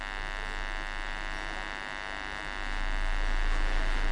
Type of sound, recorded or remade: recorded